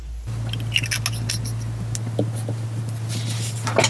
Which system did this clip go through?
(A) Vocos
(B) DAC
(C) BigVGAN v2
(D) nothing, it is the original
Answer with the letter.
D